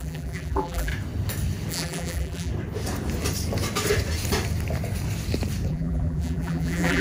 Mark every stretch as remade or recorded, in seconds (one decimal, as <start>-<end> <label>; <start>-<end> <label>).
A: 0.0-0.9 remade; 0.9-1.7 recorded; 1.7-2.5 remade; 2.5-5.7 recorded; 5.7-7.0 remade